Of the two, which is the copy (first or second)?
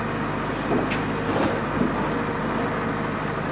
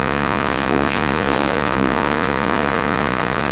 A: second